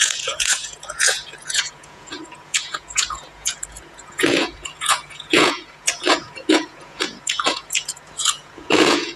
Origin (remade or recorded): remade